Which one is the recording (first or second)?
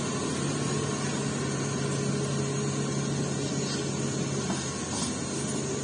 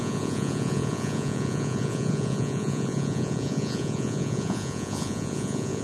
first